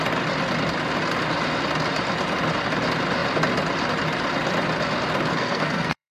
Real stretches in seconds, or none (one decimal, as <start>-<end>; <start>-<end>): 0.0-5.3